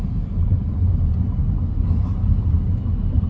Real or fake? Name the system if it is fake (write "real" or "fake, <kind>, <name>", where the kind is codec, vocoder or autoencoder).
real